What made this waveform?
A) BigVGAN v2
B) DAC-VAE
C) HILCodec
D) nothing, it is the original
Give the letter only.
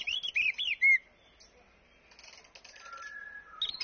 D